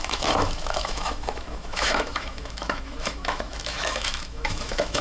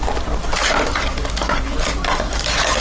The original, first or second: second